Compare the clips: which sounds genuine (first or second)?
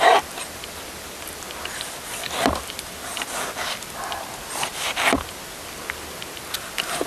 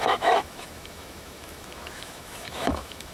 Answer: first